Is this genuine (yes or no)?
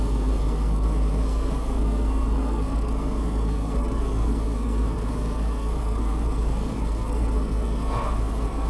no